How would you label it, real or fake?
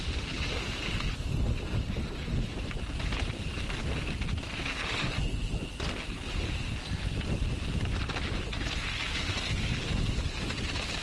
real